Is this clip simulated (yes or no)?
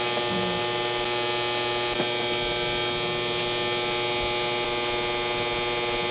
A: no